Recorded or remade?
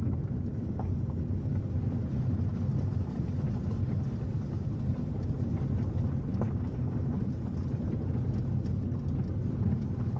recorded